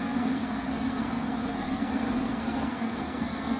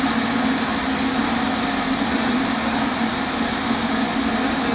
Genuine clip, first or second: second